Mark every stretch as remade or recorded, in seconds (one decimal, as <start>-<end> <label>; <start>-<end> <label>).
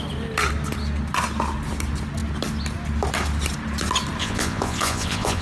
0.0-4.2 recorded; 4.2-5.4 remade